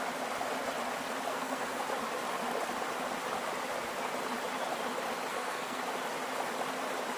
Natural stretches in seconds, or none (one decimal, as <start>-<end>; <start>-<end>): 0.0-1.3; 1.8-5.3; 5.8-7.2